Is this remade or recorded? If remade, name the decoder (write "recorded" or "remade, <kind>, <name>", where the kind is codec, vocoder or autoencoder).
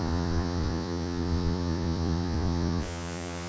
remade, vocoder, Vocos